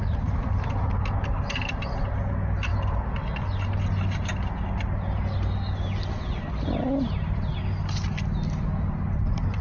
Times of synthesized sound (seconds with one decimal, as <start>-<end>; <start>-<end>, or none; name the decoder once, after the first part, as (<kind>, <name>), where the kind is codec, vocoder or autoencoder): none